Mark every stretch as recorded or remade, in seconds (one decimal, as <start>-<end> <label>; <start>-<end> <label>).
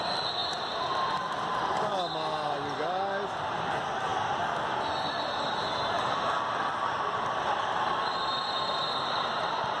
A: 0.0-9.8 recorded